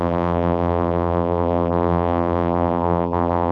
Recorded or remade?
remade